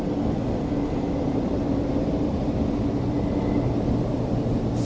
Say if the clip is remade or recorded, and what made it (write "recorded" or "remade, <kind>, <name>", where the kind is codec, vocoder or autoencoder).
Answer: recorded